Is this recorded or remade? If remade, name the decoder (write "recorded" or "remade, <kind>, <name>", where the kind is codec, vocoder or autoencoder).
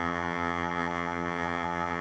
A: remade, vocoder, HiFi-GAN